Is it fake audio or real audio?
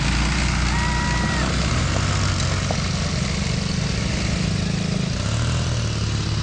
real